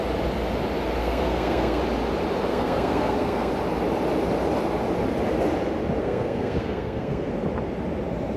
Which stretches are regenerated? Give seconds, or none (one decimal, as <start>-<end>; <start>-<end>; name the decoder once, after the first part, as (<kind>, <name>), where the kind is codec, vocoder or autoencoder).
1.0-1.8 (codec, SNAC); 2.5-3.5; 6.0-7.3